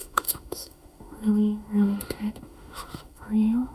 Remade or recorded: remade